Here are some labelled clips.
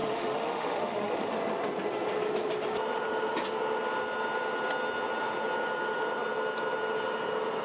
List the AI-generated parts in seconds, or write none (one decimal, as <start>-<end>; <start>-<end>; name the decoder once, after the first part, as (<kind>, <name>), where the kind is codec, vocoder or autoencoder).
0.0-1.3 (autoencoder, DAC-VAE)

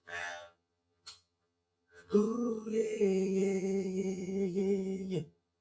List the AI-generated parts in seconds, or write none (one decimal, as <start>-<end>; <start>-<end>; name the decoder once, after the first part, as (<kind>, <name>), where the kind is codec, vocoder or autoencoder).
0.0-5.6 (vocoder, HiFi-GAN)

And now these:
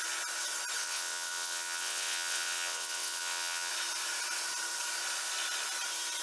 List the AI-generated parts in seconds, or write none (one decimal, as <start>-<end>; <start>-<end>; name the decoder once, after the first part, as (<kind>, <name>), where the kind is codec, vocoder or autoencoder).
0.8-3.7 (vocoder, WaveNeXt)

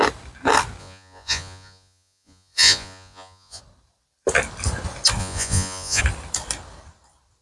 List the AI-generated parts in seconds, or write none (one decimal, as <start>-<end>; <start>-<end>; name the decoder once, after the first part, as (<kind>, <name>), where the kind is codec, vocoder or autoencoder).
0.8-3.6 (vocoder, Vocos); 5.2-6.0

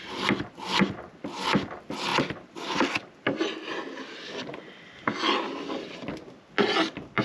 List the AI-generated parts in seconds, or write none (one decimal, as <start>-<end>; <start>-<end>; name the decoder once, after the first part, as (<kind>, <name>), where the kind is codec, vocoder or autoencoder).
none